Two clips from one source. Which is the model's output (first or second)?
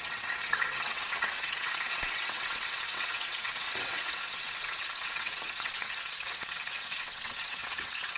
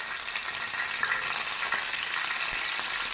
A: first